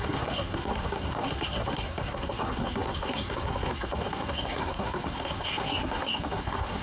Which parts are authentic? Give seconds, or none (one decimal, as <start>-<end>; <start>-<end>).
none